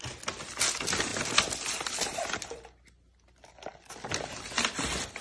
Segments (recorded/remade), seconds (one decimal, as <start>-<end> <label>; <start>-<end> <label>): 0.0-5.2 recorded